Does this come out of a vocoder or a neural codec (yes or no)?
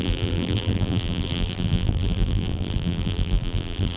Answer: yes